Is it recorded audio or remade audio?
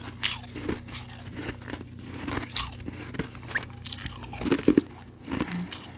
recorded